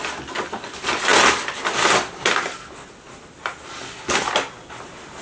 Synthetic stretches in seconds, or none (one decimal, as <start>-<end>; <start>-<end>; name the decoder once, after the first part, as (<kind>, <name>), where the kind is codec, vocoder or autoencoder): none